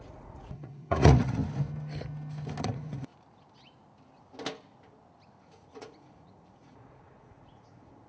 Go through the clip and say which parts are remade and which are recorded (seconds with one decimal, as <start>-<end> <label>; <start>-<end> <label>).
0.0-1.4 remade; 1.4-2.6 recorded; 2.6-3.1 remade; 3.1-5.4 recorded; 5.4-8.1 remade